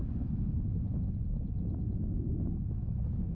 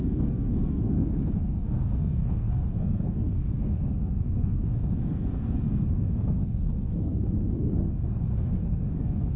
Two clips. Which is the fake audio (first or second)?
second